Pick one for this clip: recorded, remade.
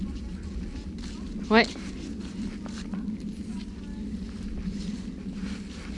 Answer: recorded